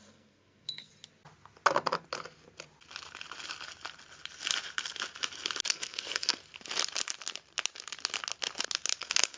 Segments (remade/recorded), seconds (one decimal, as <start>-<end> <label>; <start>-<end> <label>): 0.0-0.9 remade; 0.9-5.7 recorded; 5.7-6.4 remade; 6.4-9.0 recorded; 9.0-9.4 remade